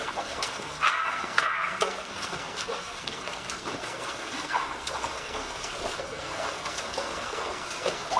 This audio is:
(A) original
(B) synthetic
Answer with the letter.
B